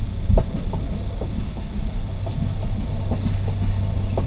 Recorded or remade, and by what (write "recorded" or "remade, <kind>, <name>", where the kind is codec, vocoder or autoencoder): recorded